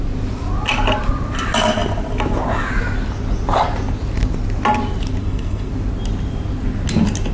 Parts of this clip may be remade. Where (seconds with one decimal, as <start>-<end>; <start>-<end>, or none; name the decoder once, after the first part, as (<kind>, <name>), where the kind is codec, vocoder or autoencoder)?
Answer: 5.2-5.7 (codec, SNAC)